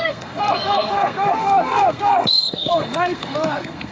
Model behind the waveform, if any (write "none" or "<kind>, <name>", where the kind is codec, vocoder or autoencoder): codec, SNAC